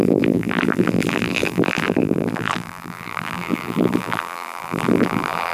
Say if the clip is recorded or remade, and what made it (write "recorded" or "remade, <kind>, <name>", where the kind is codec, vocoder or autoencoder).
remade, vocoder, BigVGAN v2